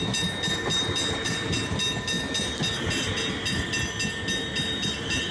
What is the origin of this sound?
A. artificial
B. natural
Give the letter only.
B